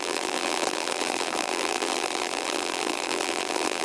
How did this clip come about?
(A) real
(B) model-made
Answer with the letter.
B